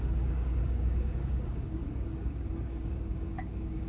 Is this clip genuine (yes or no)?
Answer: no